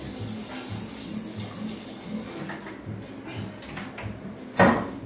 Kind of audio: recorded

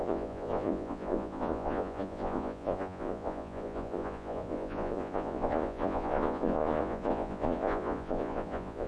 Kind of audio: remade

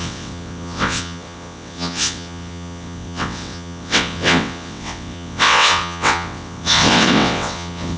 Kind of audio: remade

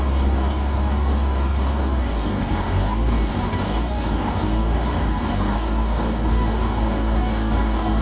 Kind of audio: remade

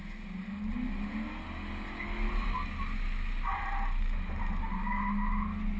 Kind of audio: recorded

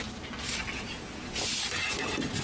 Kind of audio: recorded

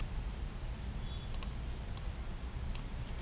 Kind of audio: remade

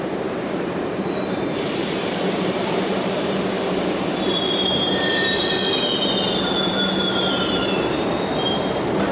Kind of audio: remade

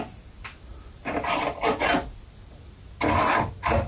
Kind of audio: recorded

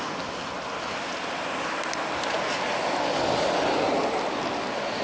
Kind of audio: recorded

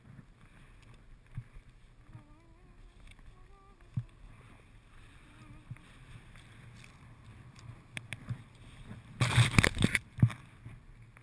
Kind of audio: recorded